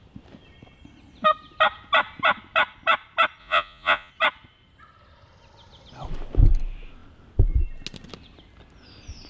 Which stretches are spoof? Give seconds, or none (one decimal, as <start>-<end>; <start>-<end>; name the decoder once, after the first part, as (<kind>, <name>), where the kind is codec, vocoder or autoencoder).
3.4-4.1 (vocoder, Vocos)